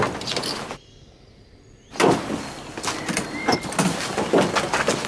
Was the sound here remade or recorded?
recorded